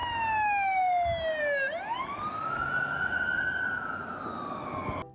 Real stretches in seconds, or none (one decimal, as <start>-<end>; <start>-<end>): 0.0-5.1